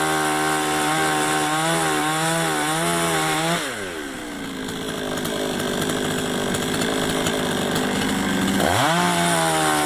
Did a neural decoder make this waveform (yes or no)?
no